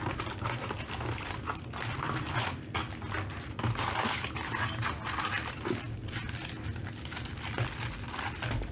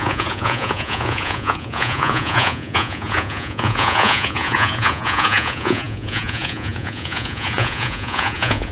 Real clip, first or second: first